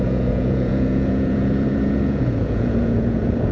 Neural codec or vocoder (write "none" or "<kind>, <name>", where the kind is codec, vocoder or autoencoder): vocoder, Vocos